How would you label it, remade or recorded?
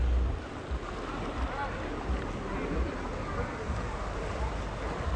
recorded